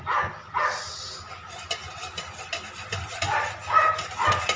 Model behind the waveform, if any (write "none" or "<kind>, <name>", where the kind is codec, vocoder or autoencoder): none